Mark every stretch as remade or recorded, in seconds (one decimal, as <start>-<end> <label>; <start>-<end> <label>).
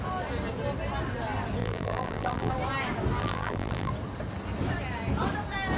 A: 0.0-1.6 recorded; 1.6-2.5 remade; 2.5-3.2 recorded; 3.2-3.9 remade; 3.9-5.8 recorded